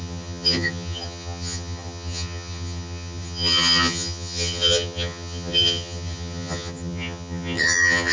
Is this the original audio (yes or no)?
no